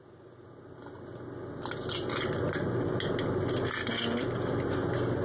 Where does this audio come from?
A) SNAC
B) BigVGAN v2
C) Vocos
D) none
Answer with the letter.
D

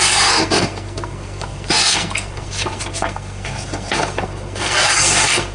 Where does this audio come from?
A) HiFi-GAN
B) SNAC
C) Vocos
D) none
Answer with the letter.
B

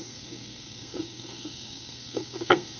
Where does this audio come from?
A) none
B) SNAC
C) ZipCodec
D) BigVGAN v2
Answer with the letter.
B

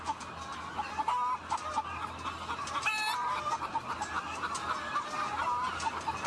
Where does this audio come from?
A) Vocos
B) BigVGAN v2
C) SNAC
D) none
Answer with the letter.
D